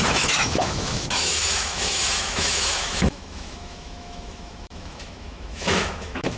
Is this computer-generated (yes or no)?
yes